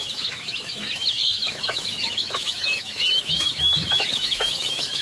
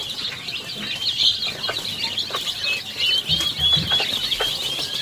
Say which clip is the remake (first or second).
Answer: first